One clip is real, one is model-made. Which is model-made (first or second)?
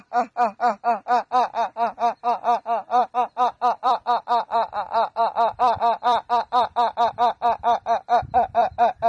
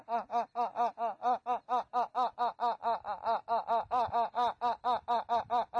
first